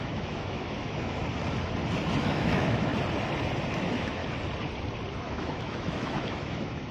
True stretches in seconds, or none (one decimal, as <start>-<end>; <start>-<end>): 1.2-2.2; 2.9-3.7; 4.2-5.2